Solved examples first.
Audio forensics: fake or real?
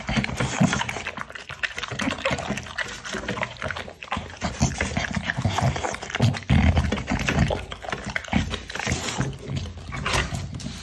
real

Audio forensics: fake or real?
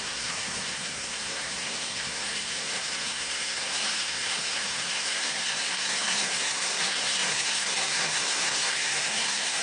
fake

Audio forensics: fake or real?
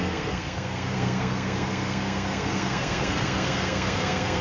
fake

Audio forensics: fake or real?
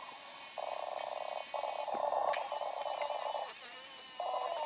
real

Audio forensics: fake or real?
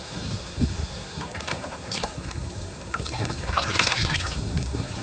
fake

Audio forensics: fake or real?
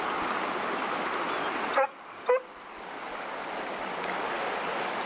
real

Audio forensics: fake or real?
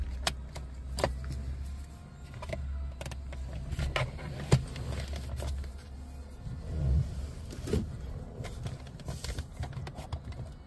real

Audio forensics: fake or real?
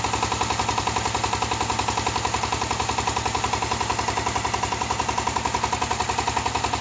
real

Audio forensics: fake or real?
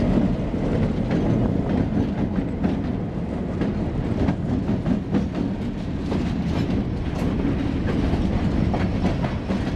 real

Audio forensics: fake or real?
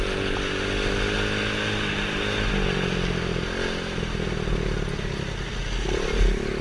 real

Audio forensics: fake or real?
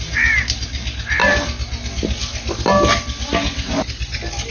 real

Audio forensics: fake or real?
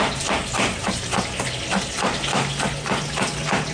real